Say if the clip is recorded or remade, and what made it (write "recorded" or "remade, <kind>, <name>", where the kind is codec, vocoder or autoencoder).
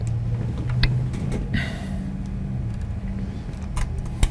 recorded